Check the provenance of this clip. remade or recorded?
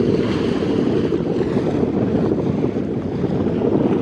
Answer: recorded